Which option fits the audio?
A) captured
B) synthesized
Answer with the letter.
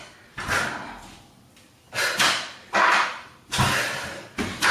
B